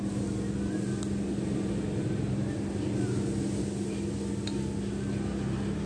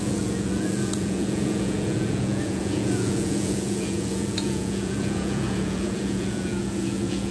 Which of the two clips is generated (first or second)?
second